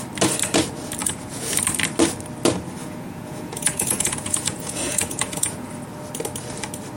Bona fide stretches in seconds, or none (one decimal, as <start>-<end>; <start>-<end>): 0.0-1.0; 1.5-2.8; 5.7-7.0